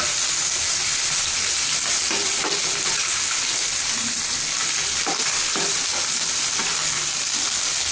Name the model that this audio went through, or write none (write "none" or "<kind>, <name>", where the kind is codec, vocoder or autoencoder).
none